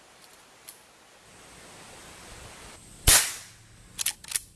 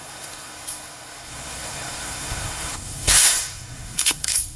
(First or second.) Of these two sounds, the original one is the first